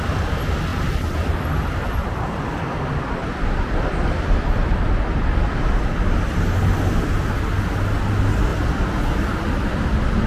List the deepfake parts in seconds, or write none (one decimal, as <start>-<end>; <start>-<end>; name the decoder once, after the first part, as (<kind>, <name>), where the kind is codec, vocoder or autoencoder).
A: 0.7-5.8 (vocoder, BigVGAN v2); 8.5-10.3